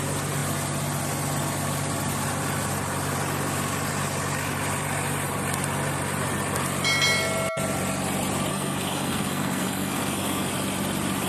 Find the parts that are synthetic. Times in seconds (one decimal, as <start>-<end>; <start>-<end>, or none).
8.5-10.5